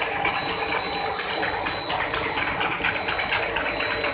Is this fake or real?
real